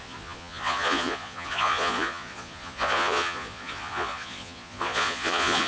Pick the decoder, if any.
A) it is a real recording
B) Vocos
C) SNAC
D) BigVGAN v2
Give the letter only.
B